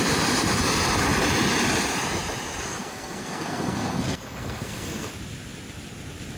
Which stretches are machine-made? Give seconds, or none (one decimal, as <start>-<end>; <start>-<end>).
2.7-5.1